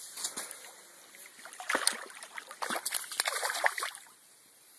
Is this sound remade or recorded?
recorded